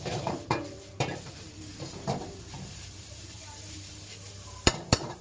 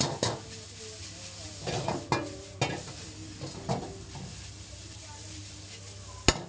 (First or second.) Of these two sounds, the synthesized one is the first